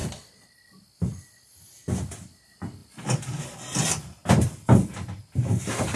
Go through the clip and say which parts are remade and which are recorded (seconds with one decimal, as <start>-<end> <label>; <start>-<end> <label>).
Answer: 0.0-6.0 recorded